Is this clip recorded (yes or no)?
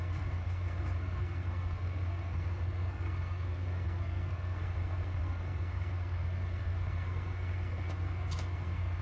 no